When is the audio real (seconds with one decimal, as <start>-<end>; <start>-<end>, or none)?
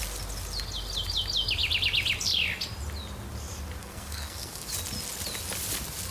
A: 0.0-3.8; 4.7-6.1